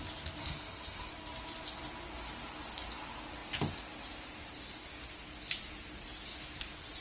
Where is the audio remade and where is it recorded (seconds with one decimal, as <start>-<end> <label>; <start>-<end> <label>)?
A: 0.0-0.4 recorded; 0.4-1.1 remade; 1.1-7.0 recorded